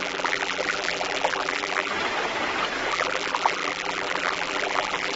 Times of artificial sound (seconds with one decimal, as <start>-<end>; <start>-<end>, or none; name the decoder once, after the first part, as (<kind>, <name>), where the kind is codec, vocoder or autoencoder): 0.0-1.9 (vocoder, BigVGAN v2); 2.9-5.2